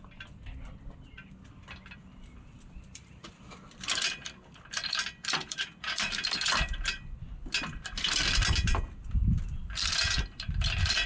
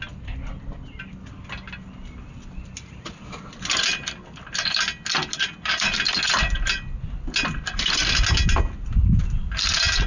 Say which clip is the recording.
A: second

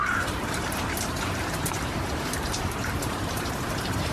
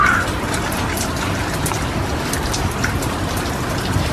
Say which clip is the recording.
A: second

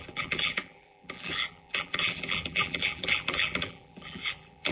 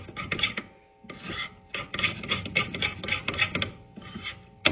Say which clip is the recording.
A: second